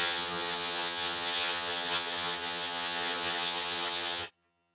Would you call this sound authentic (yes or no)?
no